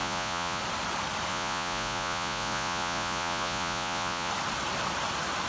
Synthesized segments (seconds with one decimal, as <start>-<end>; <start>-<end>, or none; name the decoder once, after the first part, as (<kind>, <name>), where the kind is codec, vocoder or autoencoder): 0.0-0.6 (vocoder, Vocos); 1.3-4.3